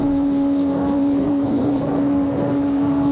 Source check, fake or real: fake